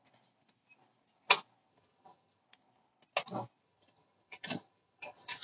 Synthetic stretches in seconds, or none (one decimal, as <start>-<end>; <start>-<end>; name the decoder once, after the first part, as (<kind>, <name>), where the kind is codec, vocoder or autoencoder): 1.7-2.4 (vocoder, HiFi-GAN); 3.6-5.4